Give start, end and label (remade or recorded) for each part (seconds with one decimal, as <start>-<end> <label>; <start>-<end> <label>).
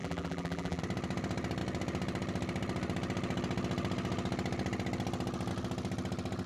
0.0-0.8 remade; 0.8-6.5 recorded